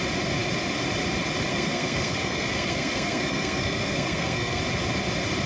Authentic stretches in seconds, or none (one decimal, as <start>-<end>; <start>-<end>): 0.0-1.5; 4.6-5.5